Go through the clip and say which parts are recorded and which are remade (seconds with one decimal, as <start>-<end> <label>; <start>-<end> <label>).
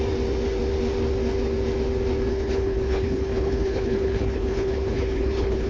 0.0-2.3 recorded; 2.3-5.7 remade